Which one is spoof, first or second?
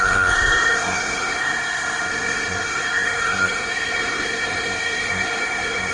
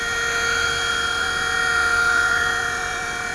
first